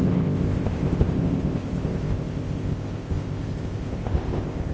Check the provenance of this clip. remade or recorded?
remade